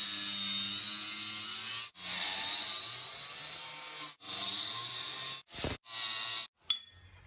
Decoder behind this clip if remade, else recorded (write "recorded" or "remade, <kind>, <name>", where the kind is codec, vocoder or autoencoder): recorded